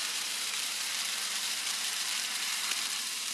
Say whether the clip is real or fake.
fake